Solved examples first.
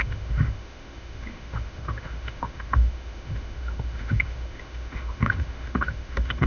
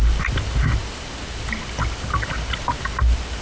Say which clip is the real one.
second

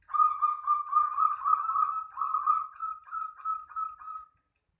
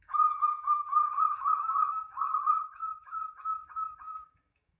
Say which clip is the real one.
first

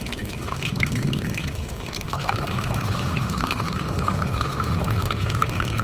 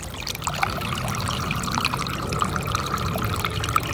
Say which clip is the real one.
second